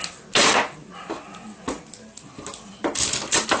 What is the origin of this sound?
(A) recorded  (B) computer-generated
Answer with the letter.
A